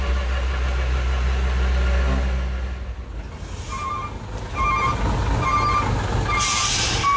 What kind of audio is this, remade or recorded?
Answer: recorded